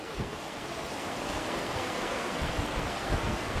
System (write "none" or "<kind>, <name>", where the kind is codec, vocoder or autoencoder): codec, SNAC